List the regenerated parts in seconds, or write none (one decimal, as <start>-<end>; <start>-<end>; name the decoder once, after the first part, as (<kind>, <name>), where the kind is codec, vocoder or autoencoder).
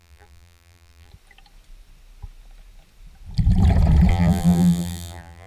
0.0-1.1 (vocoder, BigVGAN v2); 4.1-5.5